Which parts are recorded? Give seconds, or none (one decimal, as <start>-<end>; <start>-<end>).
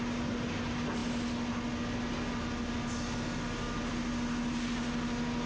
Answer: 0.0-5.5